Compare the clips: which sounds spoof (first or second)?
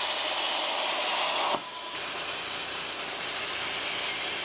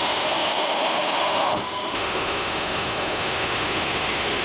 second